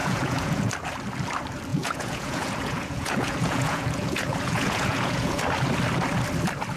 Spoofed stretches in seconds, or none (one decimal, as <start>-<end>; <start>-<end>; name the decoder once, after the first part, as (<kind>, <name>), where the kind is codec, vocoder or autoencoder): 0.0-0.7 (vocoder, Vocos); 1.7-5.4